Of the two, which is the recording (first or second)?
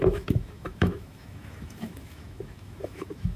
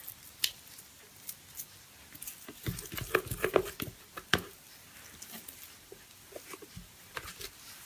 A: second